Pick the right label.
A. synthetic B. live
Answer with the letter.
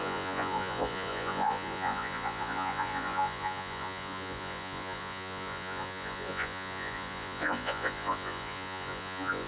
A